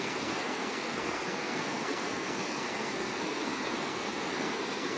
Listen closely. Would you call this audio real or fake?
fake